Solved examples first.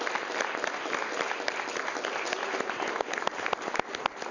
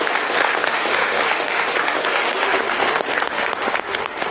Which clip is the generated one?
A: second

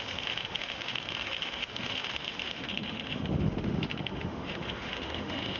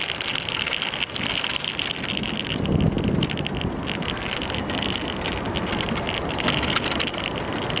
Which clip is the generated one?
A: first